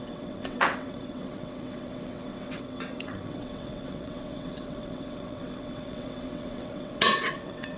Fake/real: fake